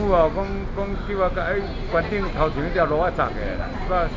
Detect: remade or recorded recorded